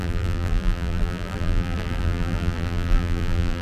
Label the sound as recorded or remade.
remade